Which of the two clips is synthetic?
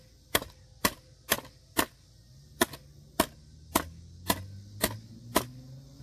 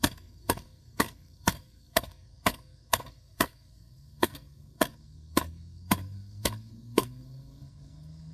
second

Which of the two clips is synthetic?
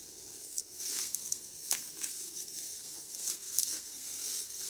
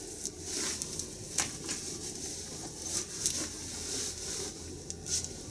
first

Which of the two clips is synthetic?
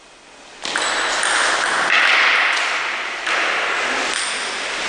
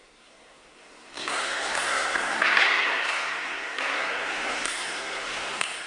second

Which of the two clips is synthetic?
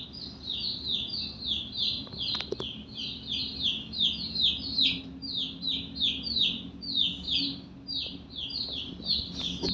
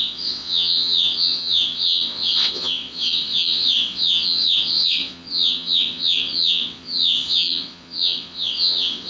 second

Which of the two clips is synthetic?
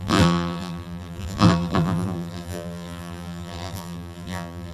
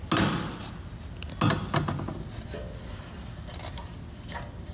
first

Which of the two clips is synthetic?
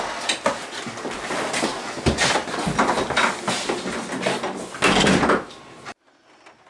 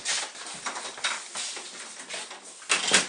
second